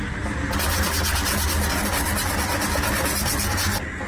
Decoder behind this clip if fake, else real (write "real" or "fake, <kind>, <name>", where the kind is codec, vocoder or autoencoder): real